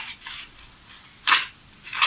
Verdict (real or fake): real